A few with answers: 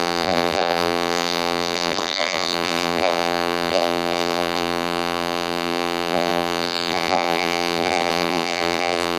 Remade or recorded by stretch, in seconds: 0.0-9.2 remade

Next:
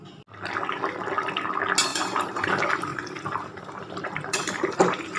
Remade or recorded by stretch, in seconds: 0.0-1.9 recorded; 1.9-2.5 remade; 2.5-2.9 recorded; 2.9-5.2 remade

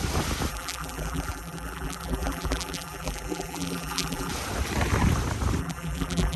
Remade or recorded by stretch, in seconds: 0.0-0.5 recorded; 0.5-4.3 remade; 4.3-5.6 recorded; 5.6-6.4 remade

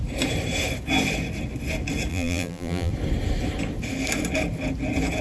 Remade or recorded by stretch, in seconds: 0.0-2.1 recorded; 2.1-2.9 remade; 2.9-5.2 recorded

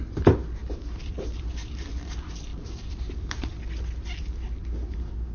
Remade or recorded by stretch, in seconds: 0.0-0.6 recorded; 0.6-2.1 remade; 2.1-2.5 recorded; 2.5-3.6 remade; 3.6-5.3 recorded

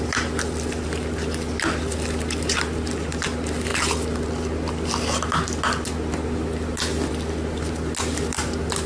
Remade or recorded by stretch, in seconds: 0.0-8.9 recorded